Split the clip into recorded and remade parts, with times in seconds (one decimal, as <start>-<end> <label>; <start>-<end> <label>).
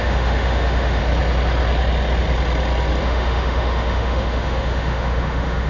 0.0-1.0 remade; 1.0-3.0 recorded; 3.0-5.7 remade